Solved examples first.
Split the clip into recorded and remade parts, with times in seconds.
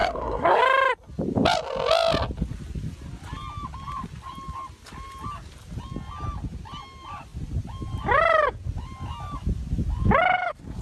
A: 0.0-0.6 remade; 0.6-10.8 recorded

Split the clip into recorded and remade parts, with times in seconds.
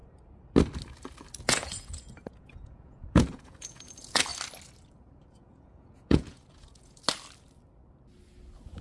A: 0.0-1.4 recorded; 1.4-4.3 remade; 4.3-5.3 recorded; 5.3-7.0 remade; 7.0-8.8 recorded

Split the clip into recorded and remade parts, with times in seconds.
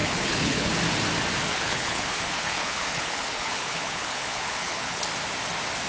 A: 0.0-0.7 remade; 0.7-1.5 recorded; 1.5-5.0 remade; 5.0-5.9 recorded